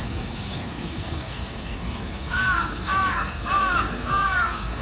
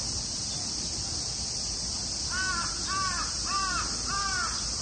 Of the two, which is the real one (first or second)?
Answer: second